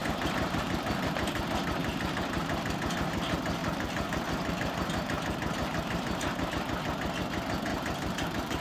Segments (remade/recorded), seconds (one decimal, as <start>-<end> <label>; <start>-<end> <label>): 0.0-1.4 remade; 1.4-1.8 recorded; 1.8-2.9 remade; 2.9-3.6 recorded; 3.6-6.5 remade; 6.5-7.7 recorded; 7.7-8.6 remade